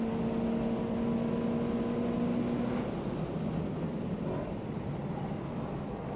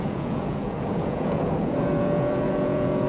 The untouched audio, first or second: first